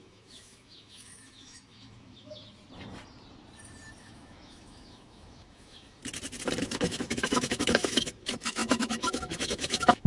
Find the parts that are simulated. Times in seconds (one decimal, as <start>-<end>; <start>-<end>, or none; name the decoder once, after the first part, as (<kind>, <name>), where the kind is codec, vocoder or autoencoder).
0.0-2.4 (autoencoder, DAC-VAE); 4.0-6.0; 6.6-10.1